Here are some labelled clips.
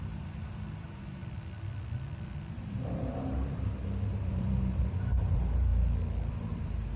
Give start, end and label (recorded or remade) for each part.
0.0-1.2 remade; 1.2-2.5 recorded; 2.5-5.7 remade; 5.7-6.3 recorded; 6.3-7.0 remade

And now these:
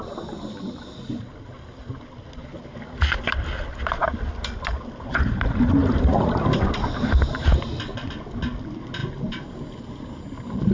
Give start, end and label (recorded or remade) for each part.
0.0-10.7 recorded

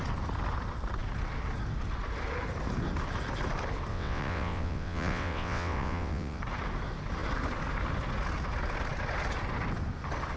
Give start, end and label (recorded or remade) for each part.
0.0-3.9 recorded; 3.9-6.4 remade; 6.4-10.4 recorded

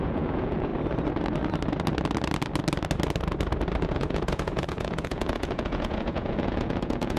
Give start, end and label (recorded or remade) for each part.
0.0-0.7 remade; 0.7-3.8 recorded; 3.8-7.2 remade